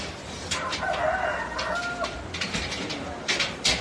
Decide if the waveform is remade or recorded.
recorded